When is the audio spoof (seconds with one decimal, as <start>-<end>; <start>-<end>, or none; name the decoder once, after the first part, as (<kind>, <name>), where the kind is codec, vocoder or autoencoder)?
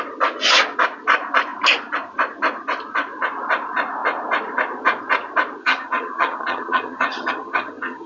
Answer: 5.6-8.1 (vocoder, HiFi-GAN)